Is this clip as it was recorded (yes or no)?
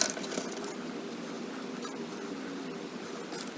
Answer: yes